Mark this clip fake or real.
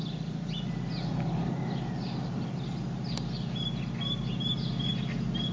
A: real